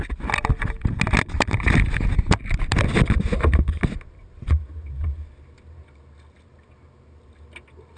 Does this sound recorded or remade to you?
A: recorded